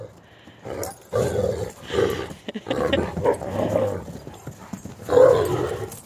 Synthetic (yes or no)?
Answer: no